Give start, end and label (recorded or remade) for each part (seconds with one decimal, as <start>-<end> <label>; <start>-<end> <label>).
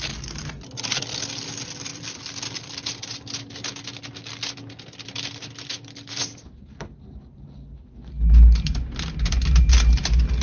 0.0-1.9 recorded; 1.9-3.1 remade; 3.1-10.4 recorded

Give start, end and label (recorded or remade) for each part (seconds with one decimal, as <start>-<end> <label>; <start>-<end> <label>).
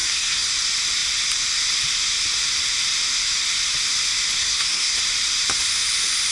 0.0-0.5 remade; 0.5-4.4 recorded; 4.4-5.0 remade; 5.0-6.3 recorded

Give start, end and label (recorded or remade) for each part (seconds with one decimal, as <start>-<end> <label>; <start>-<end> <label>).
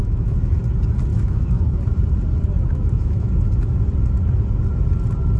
0.0-0.6 remade; 0.6-1.1 recorded; 1.1-1.8 remade; 1.8-2.7 recorded; 2.7-3.3 remade; 3.3-5.4 recorded